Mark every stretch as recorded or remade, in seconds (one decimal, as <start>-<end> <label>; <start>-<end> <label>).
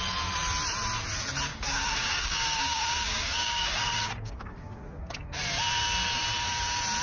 0.0-1.5 recorded; 1.5-5.1 remade; 5.1-7.0 recorded